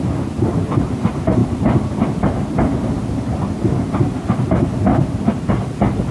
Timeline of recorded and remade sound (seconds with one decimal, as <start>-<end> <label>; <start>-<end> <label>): 0.0-1.4 recorded; 1.4-2.0 remade; 2.0-4.9 recorded; 4.9-5.5 remade; 5.5-6.1 recorded